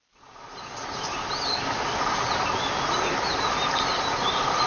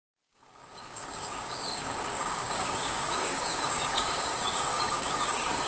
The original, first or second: first